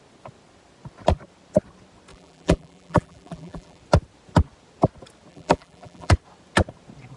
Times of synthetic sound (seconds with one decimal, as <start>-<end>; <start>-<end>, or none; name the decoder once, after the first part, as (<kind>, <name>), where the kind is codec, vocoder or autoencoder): 2.1-3.8 (vocoder, BigVGAN v2); 5.3-6.1